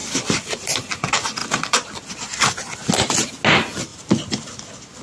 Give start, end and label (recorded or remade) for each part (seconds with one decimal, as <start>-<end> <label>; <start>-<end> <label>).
0.0-0.9 remade; 0.9-1.4 recorded; 1.4-2.1 remade; 2.1-3.9 recorded; 3.9-4.6 remade; 4.6-5.0 recorded